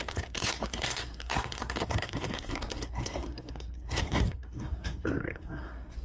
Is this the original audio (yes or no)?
no